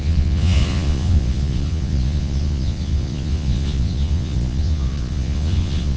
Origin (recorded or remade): remade